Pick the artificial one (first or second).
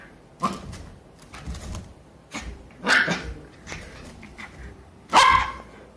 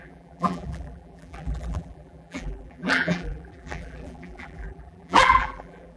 second